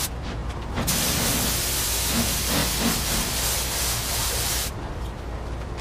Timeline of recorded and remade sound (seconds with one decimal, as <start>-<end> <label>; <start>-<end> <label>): 0.0-2.6 recorded; 2.6-4.9 remade; 4.9-5.8 recorded